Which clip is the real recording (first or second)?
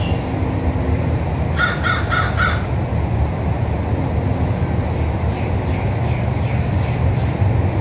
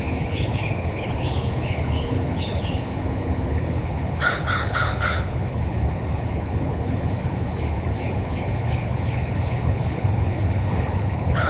first